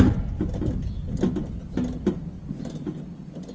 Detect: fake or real real